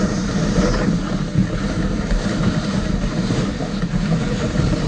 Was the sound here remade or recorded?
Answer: recorded